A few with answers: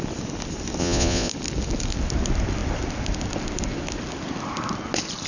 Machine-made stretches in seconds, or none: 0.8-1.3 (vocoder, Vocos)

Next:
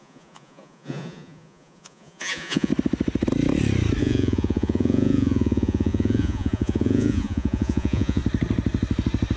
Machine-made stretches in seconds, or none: 0.0-2.7 (vocoder, Vocos); 4.0-8.2